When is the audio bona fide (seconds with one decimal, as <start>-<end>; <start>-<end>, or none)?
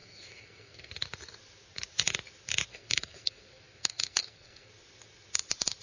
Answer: 0.9-2.7; 4.7-5.8